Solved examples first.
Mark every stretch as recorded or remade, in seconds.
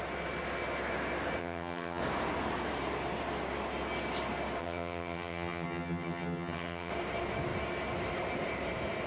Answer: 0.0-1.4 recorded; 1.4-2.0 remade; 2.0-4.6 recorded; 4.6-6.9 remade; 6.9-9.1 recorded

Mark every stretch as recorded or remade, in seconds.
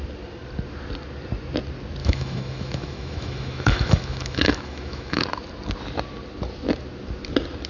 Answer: 0.0-2.0 recorded; 2.0-5.2 remade; 5.2-7.7 recorded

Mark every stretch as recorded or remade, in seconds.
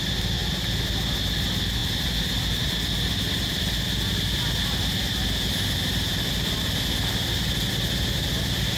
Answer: 0.0-8.8 recorded